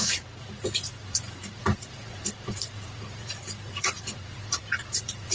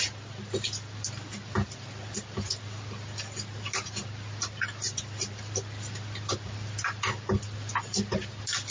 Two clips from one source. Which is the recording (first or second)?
second